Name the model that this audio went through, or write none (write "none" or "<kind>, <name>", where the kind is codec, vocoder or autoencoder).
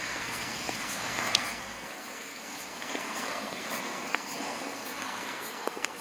codec, SNAC